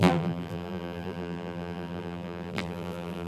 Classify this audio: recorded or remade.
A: remade